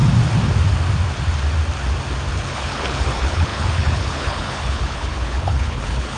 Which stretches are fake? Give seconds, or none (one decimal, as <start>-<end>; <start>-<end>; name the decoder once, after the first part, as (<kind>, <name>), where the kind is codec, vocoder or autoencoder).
2.3-6.2 (codec, HILCodec)